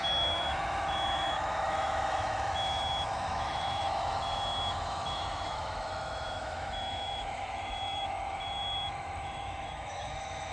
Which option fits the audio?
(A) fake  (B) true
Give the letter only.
A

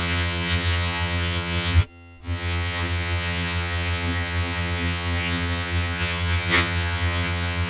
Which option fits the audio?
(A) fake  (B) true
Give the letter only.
A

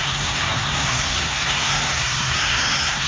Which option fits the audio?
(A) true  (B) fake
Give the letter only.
B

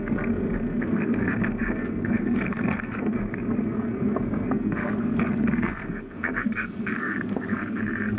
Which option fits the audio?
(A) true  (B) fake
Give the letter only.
B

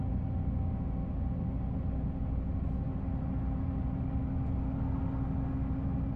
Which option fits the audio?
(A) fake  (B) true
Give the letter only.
B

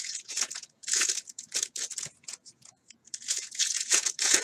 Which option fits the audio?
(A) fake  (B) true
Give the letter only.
A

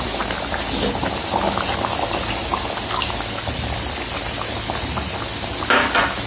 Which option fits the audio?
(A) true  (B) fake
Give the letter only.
A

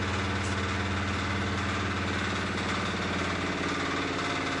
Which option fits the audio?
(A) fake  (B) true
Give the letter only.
B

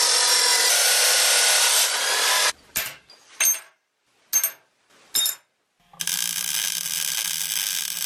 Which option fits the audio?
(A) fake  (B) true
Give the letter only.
B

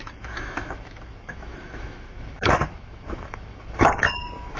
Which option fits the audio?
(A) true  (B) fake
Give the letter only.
B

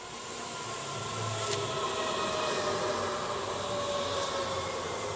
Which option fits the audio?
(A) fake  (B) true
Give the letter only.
B